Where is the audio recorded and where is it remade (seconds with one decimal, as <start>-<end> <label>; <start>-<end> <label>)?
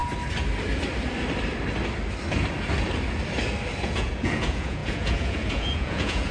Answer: 0.0-3.8 recorded; 3.8-6.3 remade